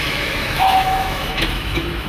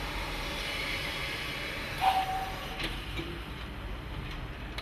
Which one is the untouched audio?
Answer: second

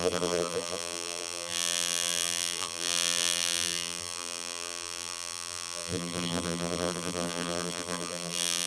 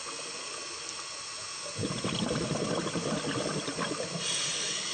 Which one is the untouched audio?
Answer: second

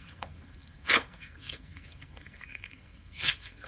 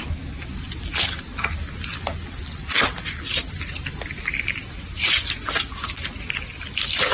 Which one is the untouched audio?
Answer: second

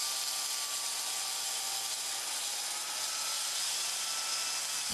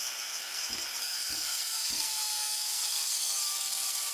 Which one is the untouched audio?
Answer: first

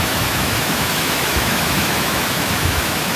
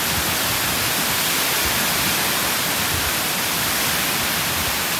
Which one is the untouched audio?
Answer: second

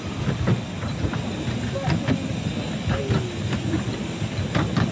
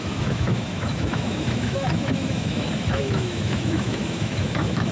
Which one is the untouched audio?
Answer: first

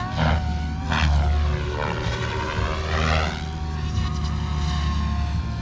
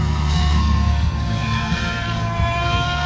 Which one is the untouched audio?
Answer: first